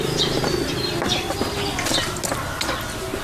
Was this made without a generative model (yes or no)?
yes